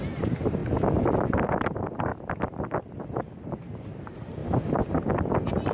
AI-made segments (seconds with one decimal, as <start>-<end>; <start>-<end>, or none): 0.0-0.6; 1.6-2.1; 3.2-4.4; 4.9-5.7